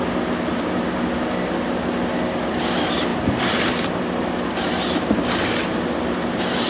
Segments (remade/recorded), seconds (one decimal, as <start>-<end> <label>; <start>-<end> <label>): 0.0-6.7 recorded